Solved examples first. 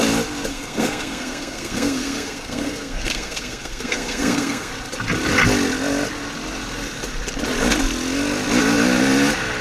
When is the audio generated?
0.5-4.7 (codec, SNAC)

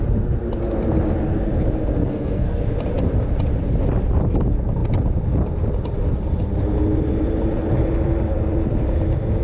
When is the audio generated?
2.0-2.6 (codec, SNAC)

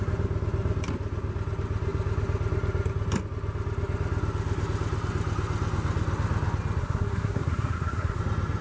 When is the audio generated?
6.8-8.2 (codec, SNAC)

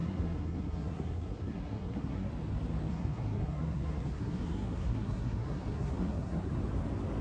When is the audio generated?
0.0-2.3 (codec, SNAC); 2.9-6.6